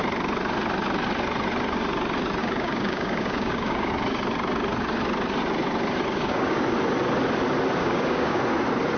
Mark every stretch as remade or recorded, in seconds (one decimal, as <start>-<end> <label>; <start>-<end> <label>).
0.0-2.4 recorded; 2.4-3.9 remade; 3.9-6.1 recorded; 6.1-6.6 remade; 6.6-7.8 recorded; 7.8-8.4 remade; 8.4-9.0 recorded